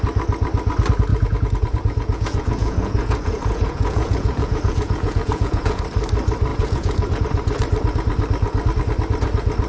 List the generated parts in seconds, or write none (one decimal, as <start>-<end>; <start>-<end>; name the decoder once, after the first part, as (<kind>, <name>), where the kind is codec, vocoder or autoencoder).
1.1-5.8 (vocoder, Vocos); 6.5-7.2